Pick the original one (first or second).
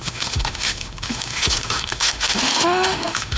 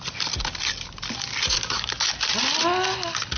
second